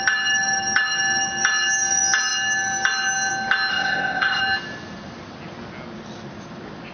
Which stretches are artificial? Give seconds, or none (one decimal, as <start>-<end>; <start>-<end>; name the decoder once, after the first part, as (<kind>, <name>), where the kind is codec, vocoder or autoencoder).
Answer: 3.7-4.4 (codec, ZipCodec)